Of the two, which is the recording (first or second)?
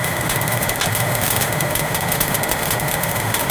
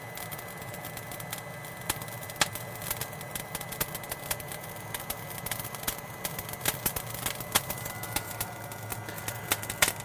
second